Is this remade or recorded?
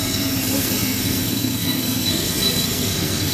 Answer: remade